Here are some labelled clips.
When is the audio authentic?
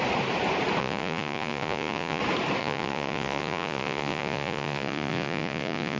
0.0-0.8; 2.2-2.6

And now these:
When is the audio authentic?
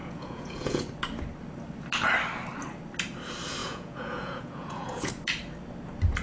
0.8-3.6; 5.1-6.2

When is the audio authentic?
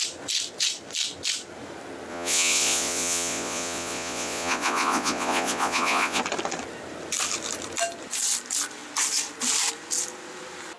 0.0-2.1; 6.2-10.8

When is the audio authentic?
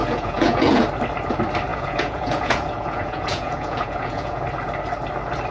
0.8-1.7; 4.4-5.5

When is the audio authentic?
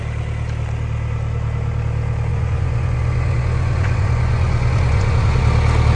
0.0-2.3; 5.4-6.0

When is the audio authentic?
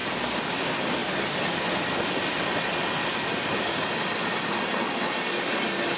0.0-6.0